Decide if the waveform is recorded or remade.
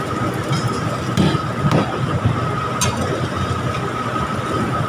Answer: recorded